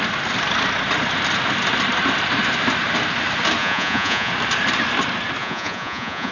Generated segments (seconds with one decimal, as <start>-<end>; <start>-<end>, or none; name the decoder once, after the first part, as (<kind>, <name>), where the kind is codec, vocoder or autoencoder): 3.6-4.3 (vocoder, Vocos); 5.4-6.3